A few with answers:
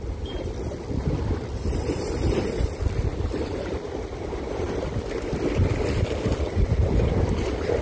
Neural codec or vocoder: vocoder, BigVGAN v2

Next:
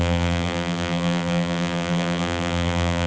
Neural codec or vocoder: vocoder, BigVGAN v2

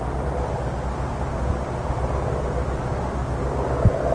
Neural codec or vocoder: none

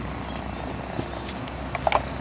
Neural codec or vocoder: none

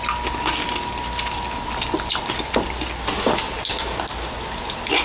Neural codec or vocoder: none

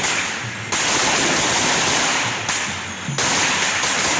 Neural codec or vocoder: none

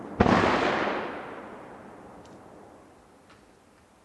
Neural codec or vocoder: none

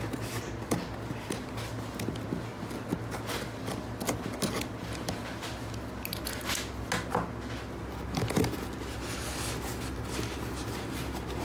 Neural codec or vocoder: none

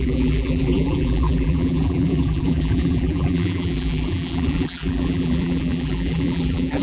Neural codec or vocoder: vocoder, BigVGAN v2